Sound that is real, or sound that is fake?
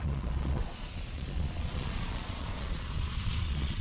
fake